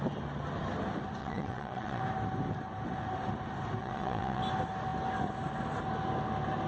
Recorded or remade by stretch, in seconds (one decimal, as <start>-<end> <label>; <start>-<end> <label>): 0.0-1.2 recorded; 1.2-2.0 remade; 2.0-3.8 recorded; 3.8-4.4 remade; 4.4-6.7 recorded